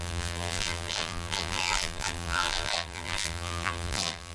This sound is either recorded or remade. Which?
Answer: remade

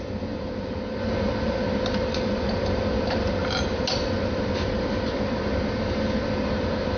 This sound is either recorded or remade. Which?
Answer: recorded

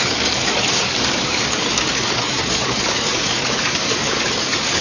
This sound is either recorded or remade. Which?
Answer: remade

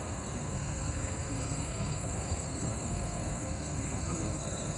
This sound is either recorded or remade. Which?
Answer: remade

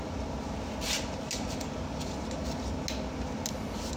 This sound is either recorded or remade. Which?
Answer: recorded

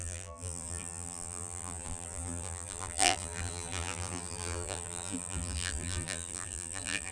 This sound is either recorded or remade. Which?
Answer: remade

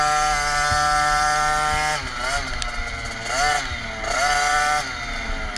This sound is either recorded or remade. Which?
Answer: recorded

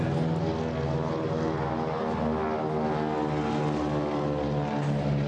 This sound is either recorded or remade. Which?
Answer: recorded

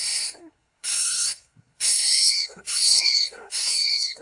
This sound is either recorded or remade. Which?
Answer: remade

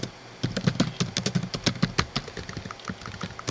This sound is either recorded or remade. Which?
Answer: recorded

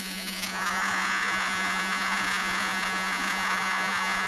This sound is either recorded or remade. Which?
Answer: remade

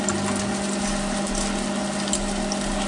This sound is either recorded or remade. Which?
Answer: recorded